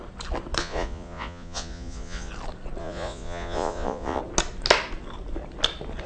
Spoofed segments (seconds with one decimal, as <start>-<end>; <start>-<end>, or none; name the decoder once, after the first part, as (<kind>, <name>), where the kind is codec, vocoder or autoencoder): 0.6-2.3 (vocoder, Vocos); 2.8-4.2